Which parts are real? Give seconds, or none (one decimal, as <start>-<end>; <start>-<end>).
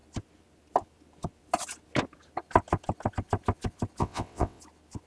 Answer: 0.0-4.0; 4.6-5.1